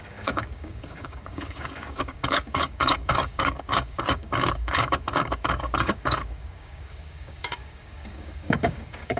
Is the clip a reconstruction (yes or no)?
yes